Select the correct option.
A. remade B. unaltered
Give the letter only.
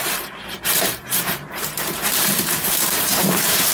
A